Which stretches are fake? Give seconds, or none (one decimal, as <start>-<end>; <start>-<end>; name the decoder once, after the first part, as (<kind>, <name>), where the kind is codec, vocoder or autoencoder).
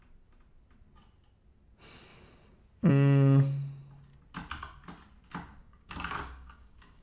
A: 5.6-7.0 (codec, DAC)